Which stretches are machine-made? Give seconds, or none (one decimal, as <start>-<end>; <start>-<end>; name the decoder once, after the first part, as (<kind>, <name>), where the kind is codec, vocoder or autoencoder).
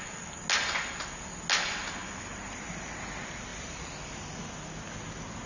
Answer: none